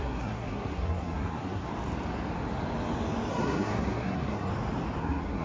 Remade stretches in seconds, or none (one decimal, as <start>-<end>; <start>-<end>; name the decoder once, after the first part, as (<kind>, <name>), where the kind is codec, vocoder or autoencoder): 0.0-1.7 (codec, SNAC); 3.3-4.5; 5.0-5.4